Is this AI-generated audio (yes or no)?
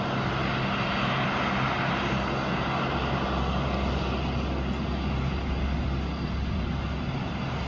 no